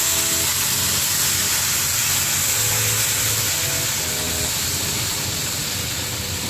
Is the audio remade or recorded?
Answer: recorded